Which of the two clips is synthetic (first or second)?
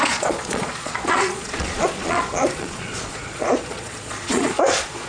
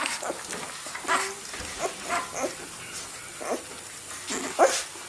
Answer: first